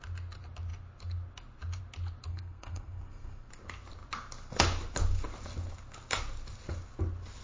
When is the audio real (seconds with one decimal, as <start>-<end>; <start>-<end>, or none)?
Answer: 0.0-2.3; 3.5-7.4